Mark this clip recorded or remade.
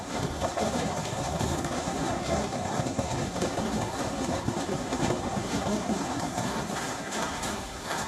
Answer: remade